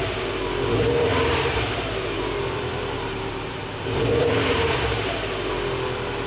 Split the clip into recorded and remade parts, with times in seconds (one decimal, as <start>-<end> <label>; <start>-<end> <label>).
0.0-1.1 recorded; 1.1-4.8 remade; 4.8-6.3 recorded